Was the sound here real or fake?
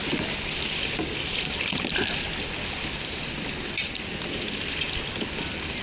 real